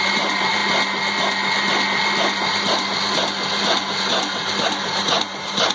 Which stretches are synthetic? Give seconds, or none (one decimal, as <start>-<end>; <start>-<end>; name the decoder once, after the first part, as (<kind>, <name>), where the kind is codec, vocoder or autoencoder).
0.0-0.6 (vocoder, BigVGAN v2); 4.0-5.7